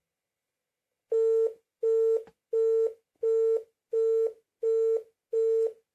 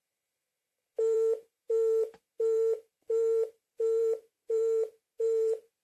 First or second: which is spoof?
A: second